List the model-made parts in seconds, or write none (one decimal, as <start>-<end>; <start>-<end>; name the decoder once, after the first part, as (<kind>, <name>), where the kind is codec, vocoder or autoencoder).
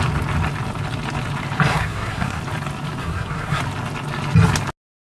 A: 1.7-2.4 (codec, SNAC); 3.0-3.6